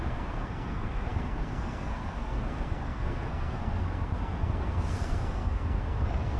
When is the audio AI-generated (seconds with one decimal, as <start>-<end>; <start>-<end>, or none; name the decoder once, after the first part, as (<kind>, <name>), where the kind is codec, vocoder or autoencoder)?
0.0-6.4 (codec, SNAC)